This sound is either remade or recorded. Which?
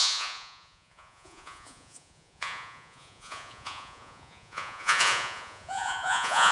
remade